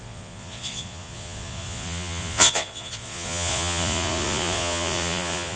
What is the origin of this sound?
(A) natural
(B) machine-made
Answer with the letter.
B